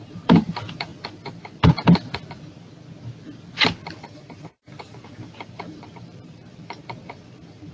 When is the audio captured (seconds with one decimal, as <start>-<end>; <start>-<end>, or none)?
0.9-3.9